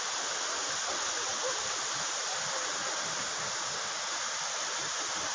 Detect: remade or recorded recorded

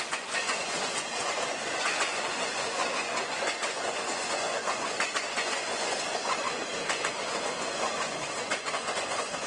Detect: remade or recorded remade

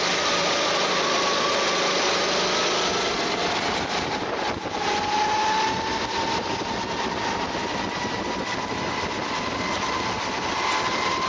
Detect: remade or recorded recorded